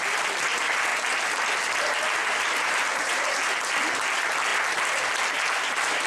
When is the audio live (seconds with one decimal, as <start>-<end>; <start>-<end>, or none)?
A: 0.0-2.2; 3.3-6.1

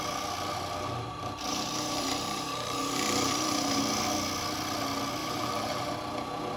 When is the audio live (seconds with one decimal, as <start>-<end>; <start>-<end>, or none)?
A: 0.0-1.5; 3.8-5.2; 5.9-6.6

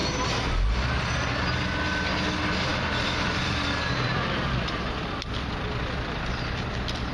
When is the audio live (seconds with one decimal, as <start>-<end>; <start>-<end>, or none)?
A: 0.0-2.7